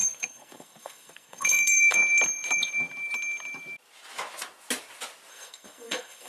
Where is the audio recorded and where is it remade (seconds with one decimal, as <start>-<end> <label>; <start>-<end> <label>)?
0.0-2.0 remade; 2.0-5.3 recorded; 5.3-6.3 remade